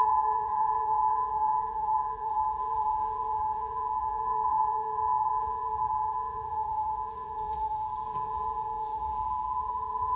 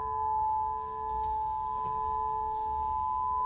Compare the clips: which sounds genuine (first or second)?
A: second